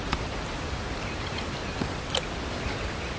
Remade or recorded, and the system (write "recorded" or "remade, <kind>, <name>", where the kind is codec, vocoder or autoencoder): recorded